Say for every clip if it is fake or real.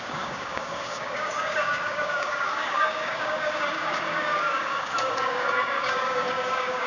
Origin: fake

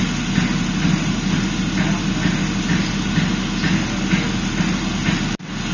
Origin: real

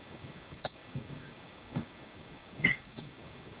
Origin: fake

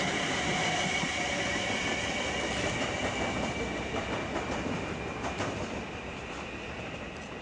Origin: real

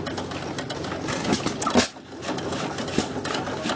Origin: real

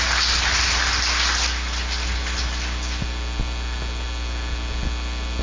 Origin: real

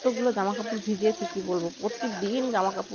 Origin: real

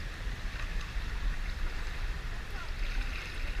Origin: real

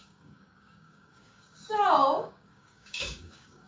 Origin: fake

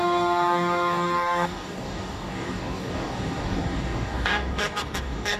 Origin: fake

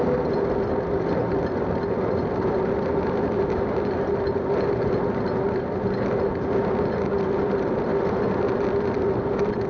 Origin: real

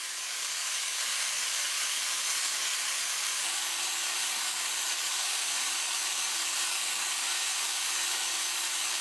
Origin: fake